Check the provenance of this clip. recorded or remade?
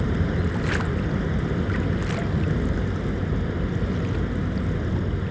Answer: recorded